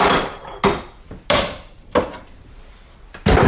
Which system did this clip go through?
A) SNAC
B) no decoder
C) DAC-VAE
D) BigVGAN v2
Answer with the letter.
B